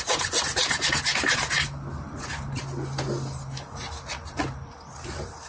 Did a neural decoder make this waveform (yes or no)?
no